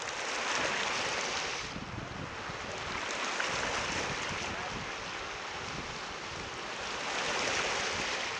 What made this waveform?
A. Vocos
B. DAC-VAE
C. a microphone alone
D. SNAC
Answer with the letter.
C